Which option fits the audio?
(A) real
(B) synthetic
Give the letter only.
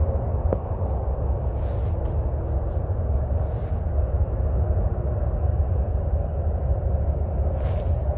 A